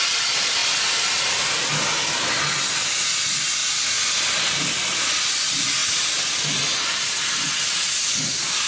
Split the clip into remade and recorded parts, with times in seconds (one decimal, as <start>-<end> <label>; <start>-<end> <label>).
0.0-8.7 recorded